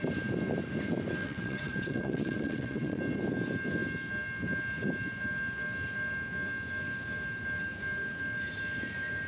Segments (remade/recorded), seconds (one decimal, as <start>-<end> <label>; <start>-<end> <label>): 0.0-1.2 recorded; 1.2-3.0 remade; 3.0-9.3 recorded